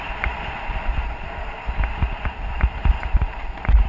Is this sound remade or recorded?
recorded